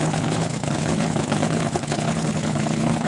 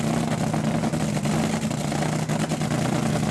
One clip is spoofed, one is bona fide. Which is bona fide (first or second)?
second